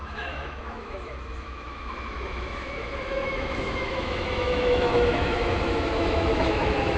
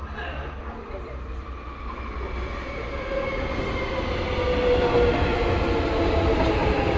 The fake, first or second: first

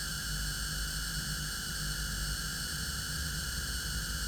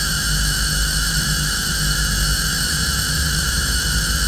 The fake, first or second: second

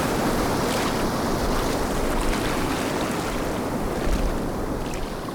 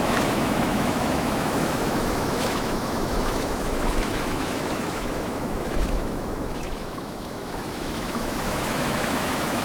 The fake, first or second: second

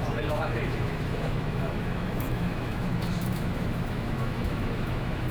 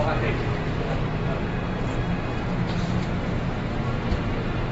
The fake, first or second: first